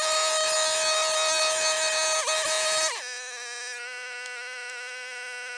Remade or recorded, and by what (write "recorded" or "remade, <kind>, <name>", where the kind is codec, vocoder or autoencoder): recorded